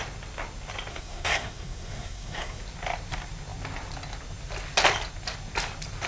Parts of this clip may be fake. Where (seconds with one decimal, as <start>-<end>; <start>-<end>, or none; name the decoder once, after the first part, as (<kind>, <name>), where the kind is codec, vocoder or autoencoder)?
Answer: 0.9-2.6 (codec, SNAC)